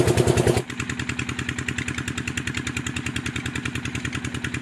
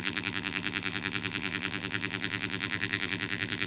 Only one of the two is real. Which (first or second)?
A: first